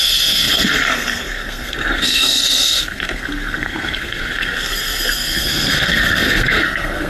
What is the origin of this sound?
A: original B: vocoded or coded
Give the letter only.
B